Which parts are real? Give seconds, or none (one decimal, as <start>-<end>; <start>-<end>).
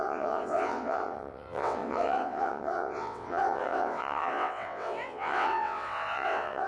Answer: none